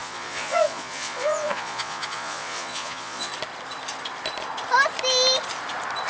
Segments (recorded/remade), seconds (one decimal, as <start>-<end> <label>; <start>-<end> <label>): 0.0-3.3 remade; 3.3-6.1 recorded